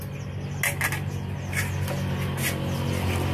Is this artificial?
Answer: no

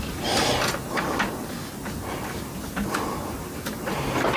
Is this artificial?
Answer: no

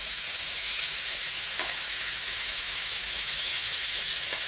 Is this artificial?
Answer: yes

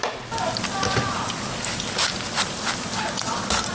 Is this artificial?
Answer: no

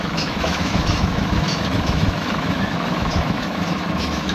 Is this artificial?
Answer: yes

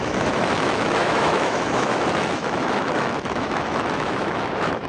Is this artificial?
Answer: yes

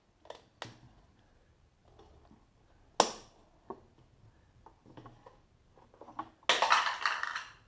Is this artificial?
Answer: no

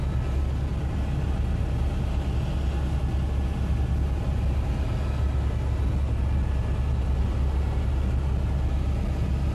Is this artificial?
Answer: no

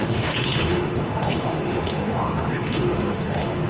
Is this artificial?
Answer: yes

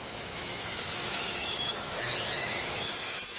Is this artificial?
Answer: yes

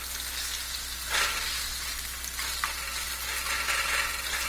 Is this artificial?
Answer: no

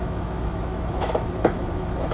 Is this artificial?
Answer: yes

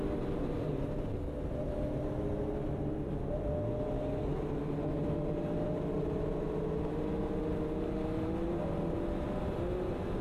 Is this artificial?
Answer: no